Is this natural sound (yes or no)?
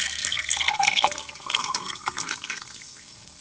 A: no